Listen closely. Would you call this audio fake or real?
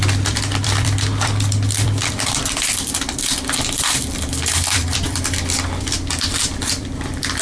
fake